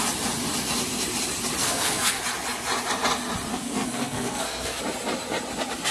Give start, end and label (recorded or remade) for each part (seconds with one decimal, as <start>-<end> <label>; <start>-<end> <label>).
0.0-1.6 recorded; 1.6-2.2 remade; 2.2-3.5 recorded; 3.5-4.8 remade; 4.8-5.9 recorded